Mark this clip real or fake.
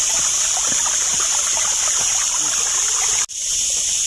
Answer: real